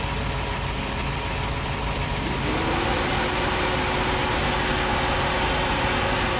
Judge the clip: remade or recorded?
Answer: recorded